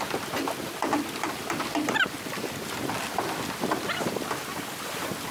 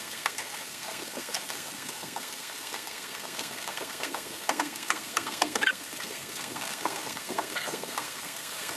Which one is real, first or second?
first